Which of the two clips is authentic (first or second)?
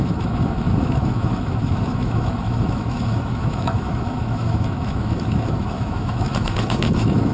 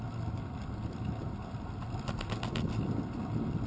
second